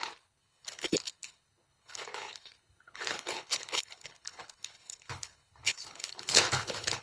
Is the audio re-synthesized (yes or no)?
yes